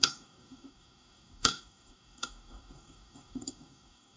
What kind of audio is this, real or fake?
fake